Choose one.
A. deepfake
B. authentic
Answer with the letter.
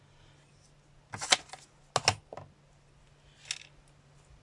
B